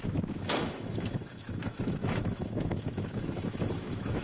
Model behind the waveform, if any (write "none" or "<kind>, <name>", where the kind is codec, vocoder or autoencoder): autoencoder, DAC-VAE